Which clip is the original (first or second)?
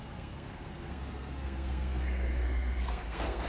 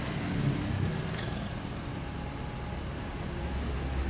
second